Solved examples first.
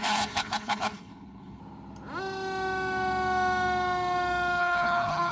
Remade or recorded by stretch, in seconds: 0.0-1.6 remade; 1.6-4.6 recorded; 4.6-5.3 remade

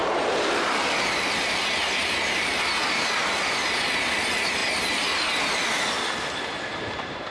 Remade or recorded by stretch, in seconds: 0.0-7.3 recorded

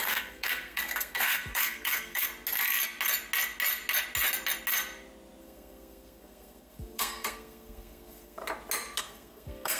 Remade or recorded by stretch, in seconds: 0.0-2.3 remade; 2.3-5.4 recorded; 5.4-8.4 remade; 8.4-9.0 recorded; 9.0-9.8 remade

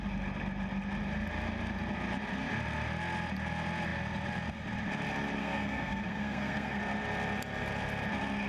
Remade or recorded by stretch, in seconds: 0.0-5.4 recorded; 5.4-6.8 remade; 6.8-8.5 recorded

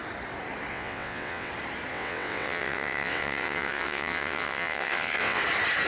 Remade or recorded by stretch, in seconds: 0.0-0.7 recorded; 0.7-1.5 remade; 1.5-1.9 recorded; 1.9-5.4 remade; 5.4-5.9 recorded

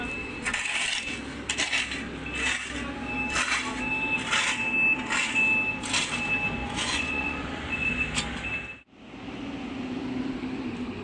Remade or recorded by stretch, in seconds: 0.0-6.6 recorded; 6.6-8.0 remade; 8.0-11.0 recorded